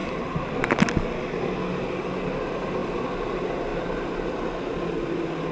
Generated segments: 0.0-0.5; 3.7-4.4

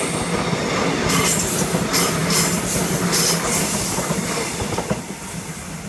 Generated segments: none

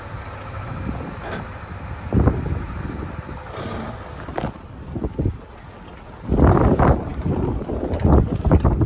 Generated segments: none

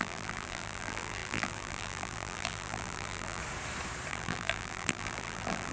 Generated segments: 0.0-3.4; 4.1-5.7

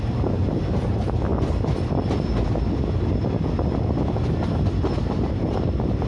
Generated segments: 0.0-1.3; 5.0-6.1

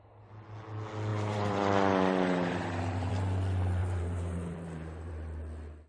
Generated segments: 1.1-3.1; 3.8-5.1

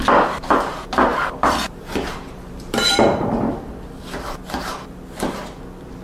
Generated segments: 1.1-4.2

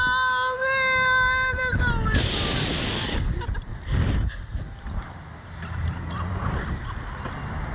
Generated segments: 3.7-5.5